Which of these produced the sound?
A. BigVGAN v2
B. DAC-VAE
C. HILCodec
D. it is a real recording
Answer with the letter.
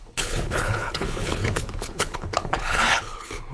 C